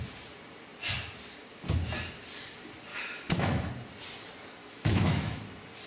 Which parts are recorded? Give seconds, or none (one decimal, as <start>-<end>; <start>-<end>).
0.0-2.9; 3.7-4.6; 5.4-5.9